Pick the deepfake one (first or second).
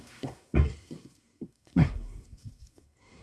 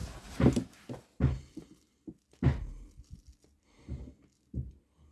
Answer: first